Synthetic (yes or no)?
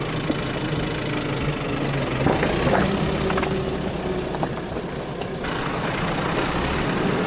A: no